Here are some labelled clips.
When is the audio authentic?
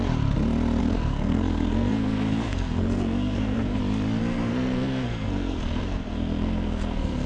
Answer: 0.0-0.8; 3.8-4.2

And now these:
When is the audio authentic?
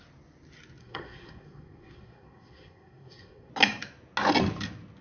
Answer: 0.0-0.8; 3.5-5.0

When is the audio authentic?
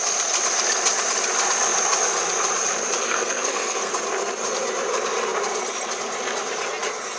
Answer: 0.0-3.0; 3.9-7.2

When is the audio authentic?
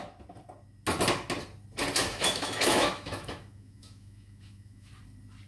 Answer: 0.0-2.0; 4.9-5.5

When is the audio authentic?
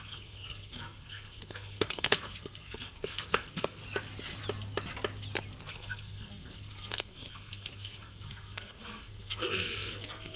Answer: 3.8-5.7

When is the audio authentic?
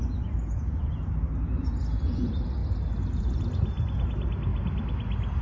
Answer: 0.0-5.4